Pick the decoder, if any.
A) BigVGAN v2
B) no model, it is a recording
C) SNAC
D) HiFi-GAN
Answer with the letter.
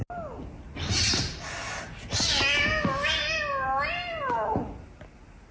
B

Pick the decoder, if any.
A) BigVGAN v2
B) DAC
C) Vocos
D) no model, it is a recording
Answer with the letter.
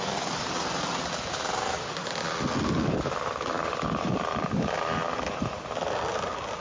D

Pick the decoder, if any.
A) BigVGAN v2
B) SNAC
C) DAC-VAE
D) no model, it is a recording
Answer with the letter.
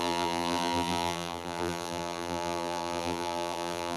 A